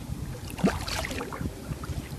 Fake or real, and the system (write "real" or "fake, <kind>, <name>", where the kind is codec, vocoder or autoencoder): real